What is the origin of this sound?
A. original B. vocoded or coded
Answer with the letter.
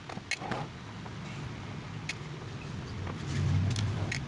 A